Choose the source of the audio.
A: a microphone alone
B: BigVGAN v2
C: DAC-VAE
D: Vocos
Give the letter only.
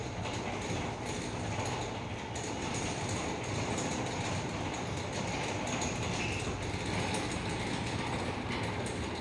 A